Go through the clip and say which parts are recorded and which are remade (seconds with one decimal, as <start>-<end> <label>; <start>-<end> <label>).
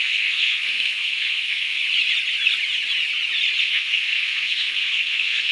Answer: 0.0-1.8 remade; 1.8-3.6 recorded; 3.6-5.5 remade